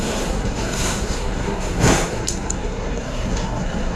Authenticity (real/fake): fake